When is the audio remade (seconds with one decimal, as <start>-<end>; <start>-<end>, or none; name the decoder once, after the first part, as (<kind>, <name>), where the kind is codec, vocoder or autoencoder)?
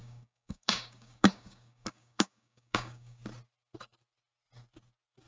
0.0-3.2 (codec, DAC)